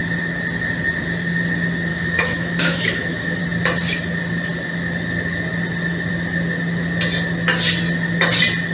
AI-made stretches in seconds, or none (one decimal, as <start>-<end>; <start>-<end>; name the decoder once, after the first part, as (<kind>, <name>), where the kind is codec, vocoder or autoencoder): 1.9-3.4 (autoencoder, DAC-VAE)